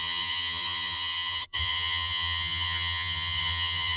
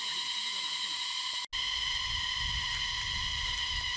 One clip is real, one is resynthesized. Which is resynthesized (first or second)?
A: first